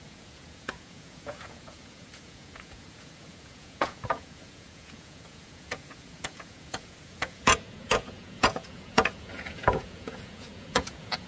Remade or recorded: remade